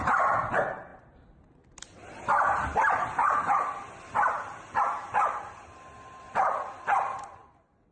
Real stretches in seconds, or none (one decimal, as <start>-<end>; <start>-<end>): 0.0-7.9